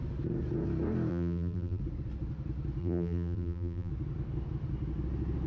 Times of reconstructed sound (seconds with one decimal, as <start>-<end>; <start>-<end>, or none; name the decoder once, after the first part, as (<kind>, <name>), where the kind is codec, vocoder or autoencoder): 1.1-1.8 (vocoder, BigVGAN v2); 2.8-3.9